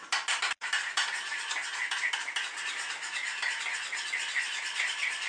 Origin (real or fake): real